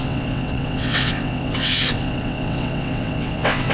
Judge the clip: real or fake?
fake